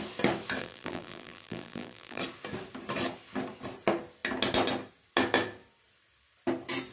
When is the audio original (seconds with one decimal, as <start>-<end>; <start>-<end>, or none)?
0.0-0.6; 2.2-6.9

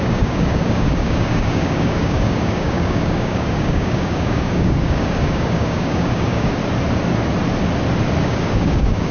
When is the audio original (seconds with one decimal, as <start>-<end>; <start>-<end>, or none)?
6.6-8.2

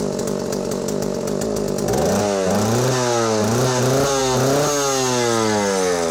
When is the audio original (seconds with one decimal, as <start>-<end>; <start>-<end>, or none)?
0.0-6.1

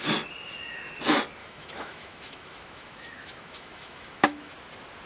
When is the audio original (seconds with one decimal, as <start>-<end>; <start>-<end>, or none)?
0.0-1.4; 4.5-5.1

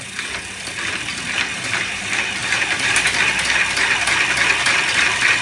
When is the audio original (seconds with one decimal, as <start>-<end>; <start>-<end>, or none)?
0.0-1.5; 2.0-2.4; 3.2-5.4

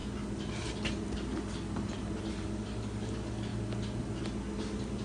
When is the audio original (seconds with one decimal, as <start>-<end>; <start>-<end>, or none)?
0.0-2.2; 3.5-5.0

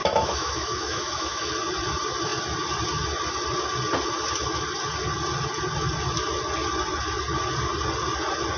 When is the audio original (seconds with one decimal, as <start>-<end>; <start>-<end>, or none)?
1.5-8.6